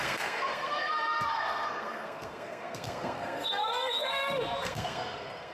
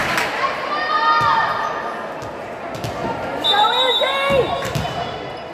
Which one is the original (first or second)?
second